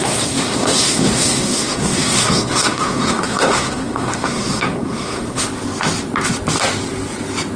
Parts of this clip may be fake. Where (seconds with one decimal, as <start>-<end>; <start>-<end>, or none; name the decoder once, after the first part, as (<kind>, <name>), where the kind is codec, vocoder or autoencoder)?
0.0-5.5 (codec, SNAC)